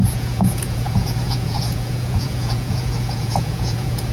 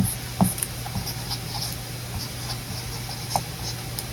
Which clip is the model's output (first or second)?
first